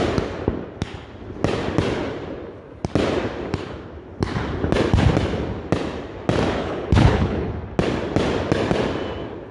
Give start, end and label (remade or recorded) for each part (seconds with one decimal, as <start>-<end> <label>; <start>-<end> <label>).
0.0-6.6 recorded; 6.6-7.5 remade; 7.5-9.5 recorded